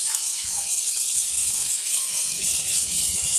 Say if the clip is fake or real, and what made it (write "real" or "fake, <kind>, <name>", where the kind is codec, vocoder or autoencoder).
fake, codec, SNAC